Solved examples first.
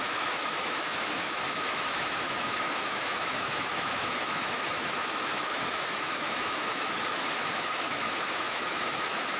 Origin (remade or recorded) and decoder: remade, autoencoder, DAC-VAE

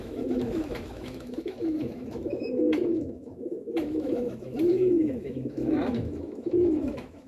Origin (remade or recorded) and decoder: remade, autoencoder, DAC-VAE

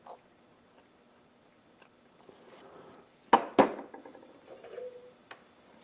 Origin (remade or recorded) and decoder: recorded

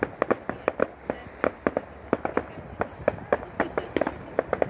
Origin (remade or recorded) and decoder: recorded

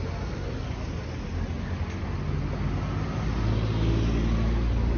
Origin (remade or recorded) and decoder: recorded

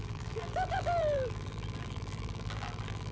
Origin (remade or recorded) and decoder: remade, vocoder, BigVGAN v2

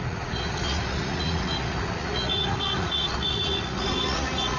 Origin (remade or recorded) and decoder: remade, vocoder, Vocos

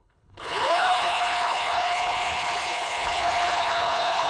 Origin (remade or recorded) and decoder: remade, codec, HILCodec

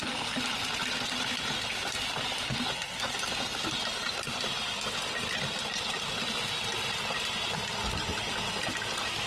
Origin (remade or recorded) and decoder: recorded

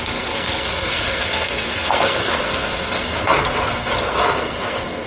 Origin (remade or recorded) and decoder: remade, codec, SNAC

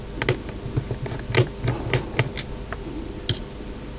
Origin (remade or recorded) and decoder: recorded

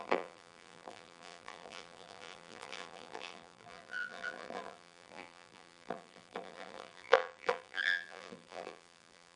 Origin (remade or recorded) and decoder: remade, vocoder, BigVGAN v2